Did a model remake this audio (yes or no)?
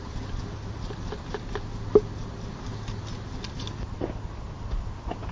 no